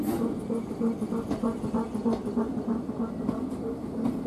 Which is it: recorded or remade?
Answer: recorded